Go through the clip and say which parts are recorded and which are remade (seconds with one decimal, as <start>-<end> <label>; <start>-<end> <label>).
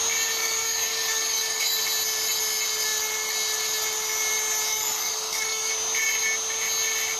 0.0-0.4 recorded; 0.4-1.8 remade; 1.8-4.7 recorded; 4.7-5.7 remade; 5.7-7.2 recorded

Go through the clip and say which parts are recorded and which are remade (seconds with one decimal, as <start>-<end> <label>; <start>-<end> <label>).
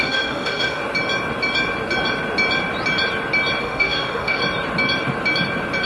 0.0-0.8 remade; 0.8-3.6 recorded; 3.6-4.4 remade; 4.4-5.9 recorded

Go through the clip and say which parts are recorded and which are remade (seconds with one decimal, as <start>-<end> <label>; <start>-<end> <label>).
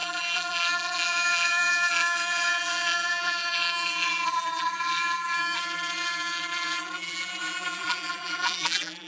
0.0-9.1 remade